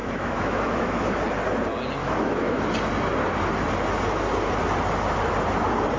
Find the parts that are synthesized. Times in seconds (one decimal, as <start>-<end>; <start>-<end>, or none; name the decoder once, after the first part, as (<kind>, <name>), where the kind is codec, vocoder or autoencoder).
0.0-1.2 (autoencoder, DAC-VAE); 2.0-2.6